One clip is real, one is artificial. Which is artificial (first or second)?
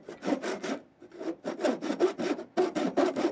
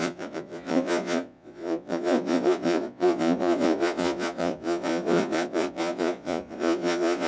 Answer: second